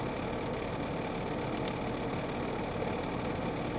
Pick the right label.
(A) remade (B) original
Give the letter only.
B